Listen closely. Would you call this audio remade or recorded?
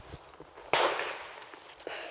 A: recorded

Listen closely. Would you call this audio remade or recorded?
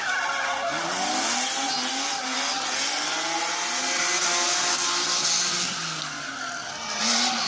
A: recorded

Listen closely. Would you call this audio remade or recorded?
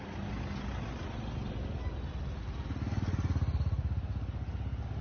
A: recorded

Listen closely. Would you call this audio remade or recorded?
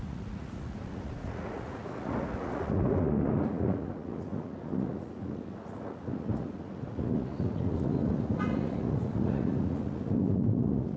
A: remade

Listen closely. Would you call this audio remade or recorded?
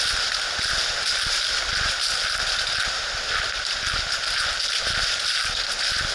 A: recorded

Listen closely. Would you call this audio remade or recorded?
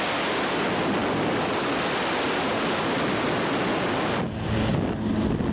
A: recorded